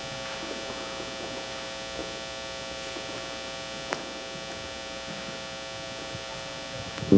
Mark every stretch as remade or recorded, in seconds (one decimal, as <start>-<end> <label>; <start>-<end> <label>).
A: 0.0-7.2 recorded